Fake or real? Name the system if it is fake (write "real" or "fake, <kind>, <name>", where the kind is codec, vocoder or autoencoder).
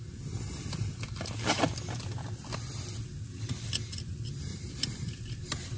real